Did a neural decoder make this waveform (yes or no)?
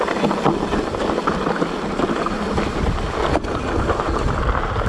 no